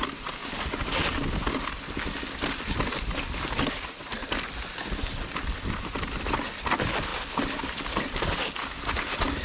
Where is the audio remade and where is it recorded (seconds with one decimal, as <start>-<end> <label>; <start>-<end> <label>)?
0.0-9.4 recorded